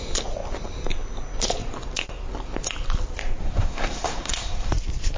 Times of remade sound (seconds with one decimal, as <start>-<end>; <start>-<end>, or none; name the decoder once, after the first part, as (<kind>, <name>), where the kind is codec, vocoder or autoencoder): 3.4-4.7 (codec, SNAC)